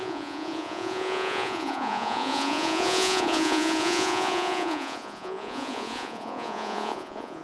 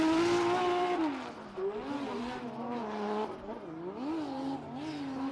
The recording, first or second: second